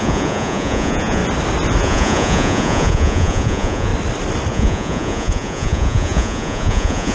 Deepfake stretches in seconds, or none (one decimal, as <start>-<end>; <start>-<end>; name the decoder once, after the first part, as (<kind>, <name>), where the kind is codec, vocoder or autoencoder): 0.0-1.2 (vocoder, Vocos); 1.8-3.9; 4.5-7.1